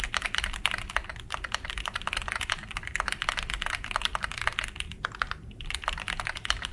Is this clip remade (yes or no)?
no